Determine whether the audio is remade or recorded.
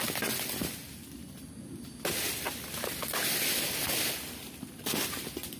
recorded